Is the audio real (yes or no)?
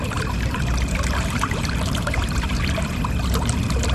no